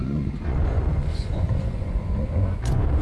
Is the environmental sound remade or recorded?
remade